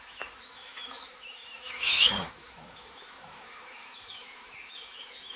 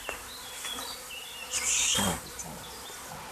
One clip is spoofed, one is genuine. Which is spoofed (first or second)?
first